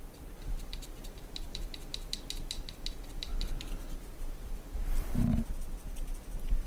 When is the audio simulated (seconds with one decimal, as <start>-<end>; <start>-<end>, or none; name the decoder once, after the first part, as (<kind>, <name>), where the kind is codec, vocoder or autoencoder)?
0.0-6.7 (vocoder, BigVGAN v2)